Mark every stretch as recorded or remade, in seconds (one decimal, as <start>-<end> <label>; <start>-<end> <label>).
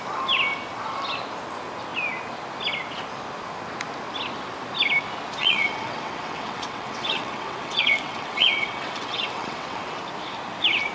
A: 0.0-5.4 recorded; 5.4-10.0 remade; 10.0-10.9 recorded